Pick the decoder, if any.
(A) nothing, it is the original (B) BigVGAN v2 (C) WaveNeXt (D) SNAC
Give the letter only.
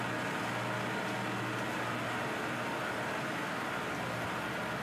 A